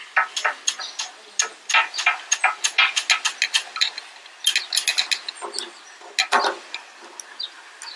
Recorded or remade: recorded